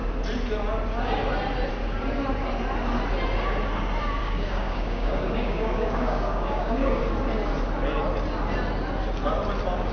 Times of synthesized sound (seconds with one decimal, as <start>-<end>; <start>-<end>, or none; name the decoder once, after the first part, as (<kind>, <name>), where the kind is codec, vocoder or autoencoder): 4.2-7.0 (codec, DAC)